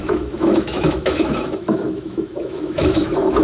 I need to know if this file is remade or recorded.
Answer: remade